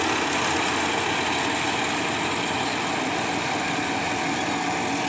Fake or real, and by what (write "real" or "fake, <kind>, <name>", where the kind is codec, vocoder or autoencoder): real